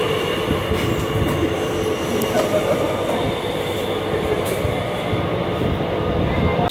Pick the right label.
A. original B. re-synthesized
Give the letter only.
A